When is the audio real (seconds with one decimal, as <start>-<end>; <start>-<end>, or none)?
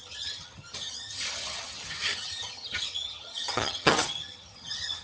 none